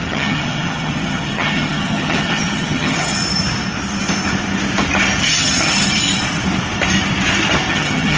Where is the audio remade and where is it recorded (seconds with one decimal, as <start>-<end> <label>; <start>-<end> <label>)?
0.0-3.2 remade; 3.2-5.2 recorded; 5.2-5.7 remade; 5.7-7.7 recorded; 7.7-8.2 remade